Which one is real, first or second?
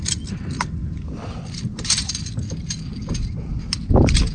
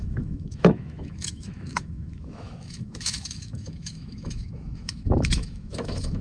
first